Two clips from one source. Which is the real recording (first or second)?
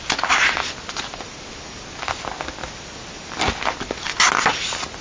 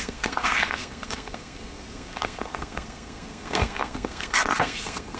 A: first